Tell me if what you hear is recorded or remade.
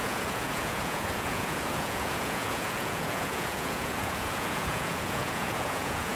remade